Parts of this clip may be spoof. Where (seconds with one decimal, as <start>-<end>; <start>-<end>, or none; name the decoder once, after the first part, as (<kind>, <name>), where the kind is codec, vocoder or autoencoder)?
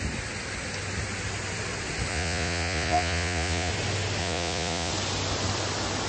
2.1-3.7 (vocoder, Vocos); 4.2-4.9